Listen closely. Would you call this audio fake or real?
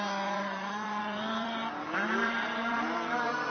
fake